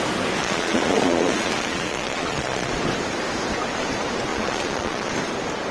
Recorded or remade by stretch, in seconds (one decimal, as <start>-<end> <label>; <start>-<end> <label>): 0.0-0.4 recorded; 0.4-2.7 remade; 2.7-4.3 recorded; 4.3-5.1 remade; 5.1-5.7 recorded